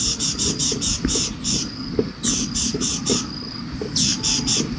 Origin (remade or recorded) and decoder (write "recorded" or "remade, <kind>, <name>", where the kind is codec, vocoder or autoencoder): remade, vocoder, BigVGAN v2